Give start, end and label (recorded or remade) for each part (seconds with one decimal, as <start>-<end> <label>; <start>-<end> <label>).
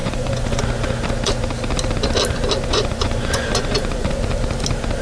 0.0-0.6 remade; 0.6-2.7 recorded; 2.7-4.1 remade; 4.1-5.0 recorded